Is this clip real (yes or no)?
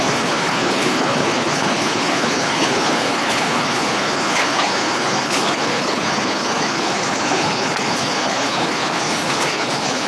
no